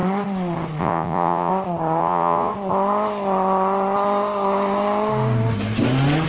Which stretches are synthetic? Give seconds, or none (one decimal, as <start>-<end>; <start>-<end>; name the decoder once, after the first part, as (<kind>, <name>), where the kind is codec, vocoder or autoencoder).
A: 0.8-1.5 (vocoder, Vocos); 2.0-2.5